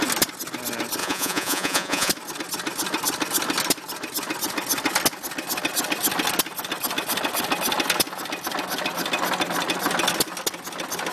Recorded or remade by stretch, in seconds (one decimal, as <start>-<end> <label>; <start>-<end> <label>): 0.0-1.0 recorded; 1.0-2.1 remade; 2.1-11.1 recorded